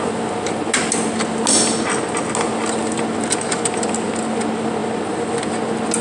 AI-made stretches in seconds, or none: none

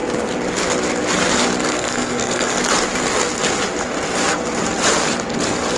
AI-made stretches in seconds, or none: 1.7-2.6 (codec, SNAC)

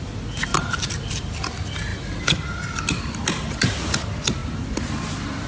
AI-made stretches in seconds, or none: none

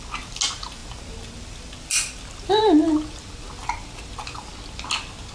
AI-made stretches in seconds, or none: none